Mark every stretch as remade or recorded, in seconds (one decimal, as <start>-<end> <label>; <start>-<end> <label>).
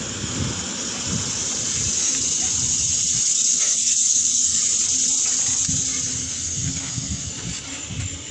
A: 0.0-3.5 recorded; 3.5-4.6 remade; 4.6-6.2 recorded; 6.2-7.3 remade; 7.3-8.3 recorded